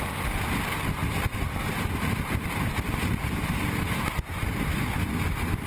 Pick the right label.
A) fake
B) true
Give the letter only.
B